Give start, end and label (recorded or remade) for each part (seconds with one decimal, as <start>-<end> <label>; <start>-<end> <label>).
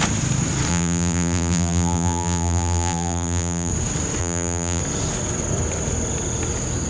0.0-0.7 recorded; 0.7-3.7 remade; 3.7-4.2 recorded; 4.2-4.8 remade; 4.8-6.9 recorded